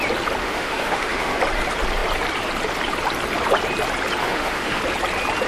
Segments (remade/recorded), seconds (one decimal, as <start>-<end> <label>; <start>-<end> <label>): 0.0-0.4 recorded; 0.4-1.4 remade; 1.4-4.2 recorded; 4.2-4.8 remade; 4.8-5.5 recorded